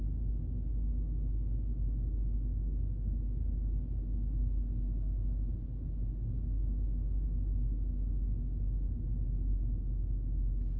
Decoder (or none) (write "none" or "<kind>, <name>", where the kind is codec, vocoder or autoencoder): none